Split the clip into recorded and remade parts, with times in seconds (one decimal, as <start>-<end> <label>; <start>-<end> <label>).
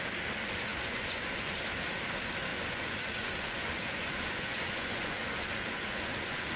0.0-0.7 recorded; 0.7-1.6 remade; 1.6-2.5 recorded; 2.5-6.6 remade